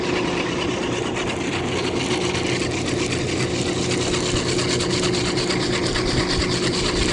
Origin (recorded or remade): recorded